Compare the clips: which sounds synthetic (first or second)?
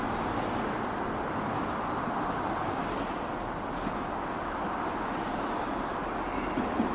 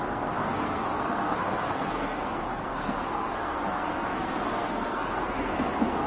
second